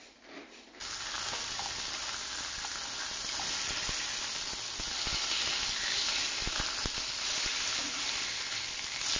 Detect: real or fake real